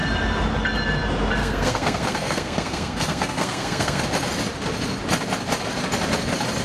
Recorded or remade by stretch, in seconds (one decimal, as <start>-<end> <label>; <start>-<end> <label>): 0.0-1.4 recorded; 1.4-4.0 remade; 4.0-6.6 recorded

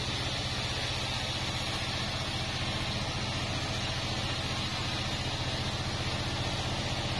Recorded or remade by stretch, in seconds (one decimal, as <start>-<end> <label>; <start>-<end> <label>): 0.0-7.2 recorded

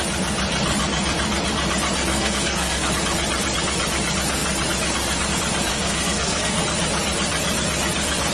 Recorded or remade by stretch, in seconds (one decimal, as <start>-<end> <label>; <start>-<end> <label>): 0.0-2.1 recorded; 2.1-2.9 remade; 2.9-5.7 recorded; 5.7-6.6 remade; 6.6-8.3 recorded

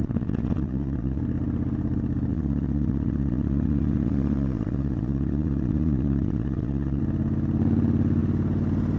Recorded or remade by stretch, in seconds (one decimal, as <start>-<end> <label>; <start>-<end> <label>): 0.0-1.2 remade; 1.2-2.3 recorded; 2.3-7.0 remade; 7.0-9.0 recorded

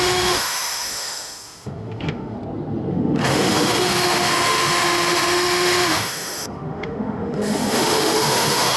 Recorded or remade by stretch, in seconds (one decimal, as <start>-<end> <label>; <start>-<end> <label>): 0.0-2.4 remade; 2.4-2.9 recorded; 2.9-8.8 remade